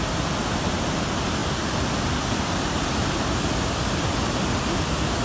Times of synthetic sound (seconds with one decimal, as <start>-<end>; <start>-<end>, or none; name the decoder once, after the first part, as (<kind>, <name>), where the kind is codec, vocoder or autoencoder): none